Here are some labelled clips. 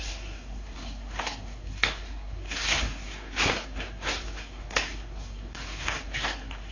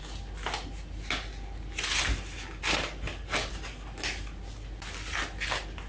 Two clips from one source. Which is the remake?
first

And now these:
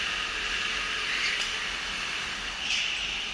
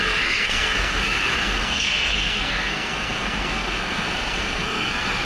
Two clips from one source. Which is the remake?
second